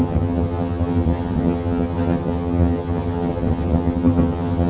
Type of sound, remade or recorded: remade